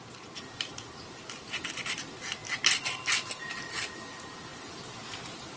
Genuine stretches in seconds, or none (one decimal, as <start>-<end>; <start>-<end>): 0.0-5.6